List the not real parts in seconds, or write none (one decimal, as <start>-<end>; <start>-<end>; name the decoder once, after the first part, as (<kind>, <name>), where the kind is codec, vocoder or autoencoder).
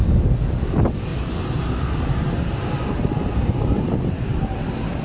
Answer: 1.1-4.0 (vocoder, BigVGAN v2)